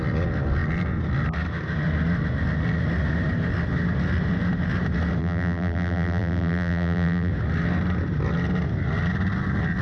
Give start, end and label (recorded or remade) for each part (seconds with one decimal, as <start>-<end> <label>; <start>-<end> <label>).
0.0-5.2 recorded; 5.2-7.3 remade; 7.3-9.8 recorded